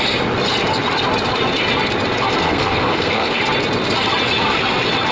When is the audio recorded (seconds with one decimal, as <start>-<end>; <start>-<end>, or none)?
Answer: 0.0-2.4; 3.4-5.1